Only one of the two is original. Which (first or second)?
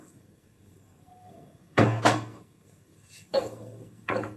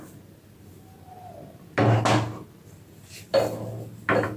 second